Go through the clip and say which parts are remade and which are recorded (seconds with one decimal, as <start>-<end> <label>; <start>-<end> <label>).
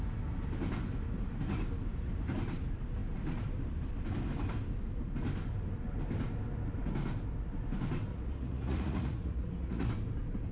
0.0-8.1 recorded; 8.1-9.9 remade; 9.9-10.5 recorded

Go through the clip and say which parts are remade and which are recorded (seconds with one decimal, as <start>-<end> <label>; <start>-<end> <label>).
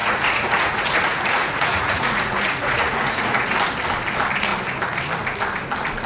0.0-3.5 remade; 3.5-6.1 recorded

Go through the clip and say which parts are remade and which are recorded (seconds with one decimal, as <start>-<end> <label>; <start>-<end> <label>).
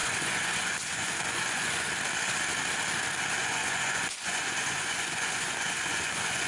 0.0-1.9 remade; 1.9-3.4 recorded; 3.4-6.5 remade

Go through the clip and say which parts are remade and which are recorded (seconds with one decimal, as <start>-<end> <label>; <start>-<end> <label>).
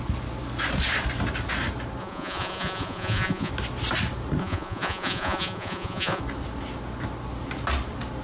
0.0-2.0 recorded; 2.0-3.5 remade; 3.5-4.4 recorded; 4.4-6.2 remade; 6.2-8.2 recorded